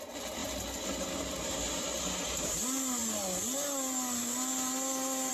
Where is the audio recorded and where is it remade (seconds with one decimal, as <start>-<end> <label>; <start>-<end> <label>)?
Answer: 0.0-5.3 recorded